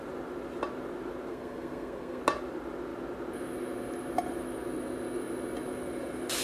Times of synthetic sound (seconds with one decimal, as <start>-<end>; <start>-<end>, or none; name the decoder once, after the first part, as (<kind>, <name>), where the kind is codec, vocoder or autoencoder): 1.3-2.2 (codec, SNAC)